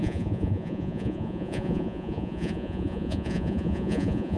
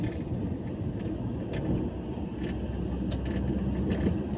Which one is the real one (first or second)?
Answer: second